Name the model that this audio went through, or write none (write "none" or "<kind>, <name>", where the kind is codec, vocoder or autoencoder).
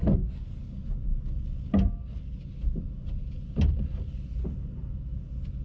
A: none